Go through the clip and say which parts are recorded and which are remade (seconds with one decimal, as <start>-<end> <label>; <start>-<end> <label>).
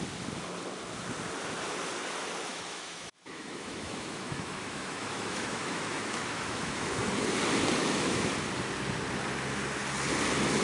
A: 0.0-2.5 recorded; 2.5-7.1 remade; 7.1-7.8 recorded; 7.8-8.3 remade; 8.3-10.6 recorded